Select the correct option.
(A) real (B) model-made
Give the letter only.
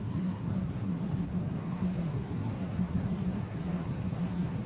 B